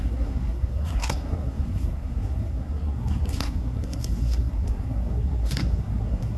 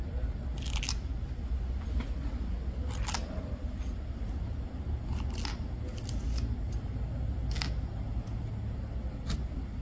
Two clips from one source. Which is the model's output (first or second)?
first